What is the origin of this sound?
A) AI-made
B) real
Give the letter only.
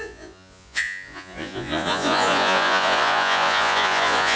A